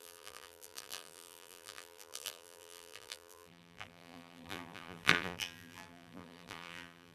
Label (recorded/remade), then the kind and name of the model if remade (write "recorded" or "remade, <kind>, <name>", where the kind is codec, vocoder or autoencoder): remade, vocoder, BigVGAN v2